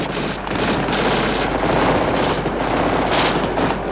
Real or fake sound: real